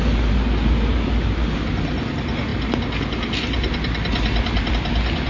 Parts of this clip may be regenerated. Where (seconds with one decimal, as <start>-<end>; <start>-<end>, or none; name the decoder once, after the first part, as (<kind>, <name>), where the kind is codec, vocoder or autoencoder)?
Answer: none